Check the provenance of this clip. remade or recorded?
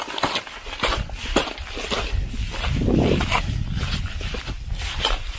recorded